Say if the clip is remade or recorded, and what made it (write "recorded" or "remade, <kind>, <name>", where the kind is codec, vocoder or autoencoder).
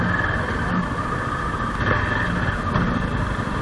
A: recorded